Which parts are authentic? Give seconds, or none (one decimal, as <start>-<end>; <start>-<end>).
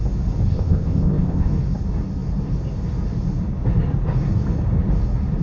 0.0-0.5; 1.5-5.4